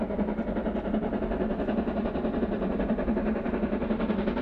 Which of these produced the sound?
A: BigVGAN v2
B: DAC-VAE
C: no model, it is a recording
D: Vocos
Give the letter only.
C